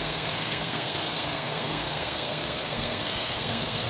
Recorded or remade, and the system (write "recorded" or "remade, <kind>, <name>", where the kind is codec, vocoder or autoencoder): remade, codec, SNAC